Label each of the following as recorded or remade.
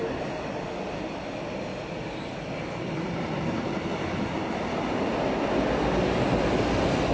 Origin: recorded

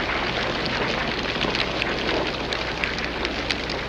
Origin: recorded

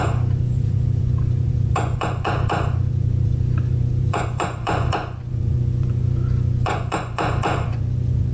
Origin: remade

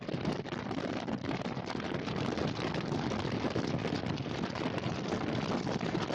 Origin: recorded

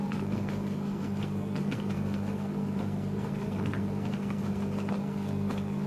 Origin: remade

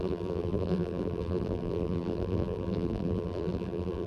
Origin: remade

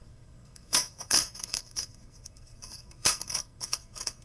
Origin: remade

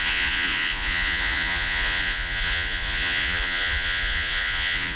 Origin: remade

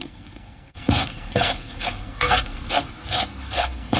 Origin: remade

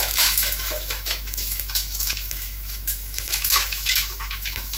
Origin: remade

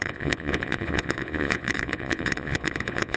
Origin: remade